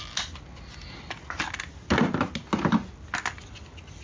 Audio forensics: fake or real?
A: real